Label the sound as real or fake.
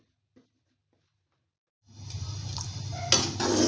real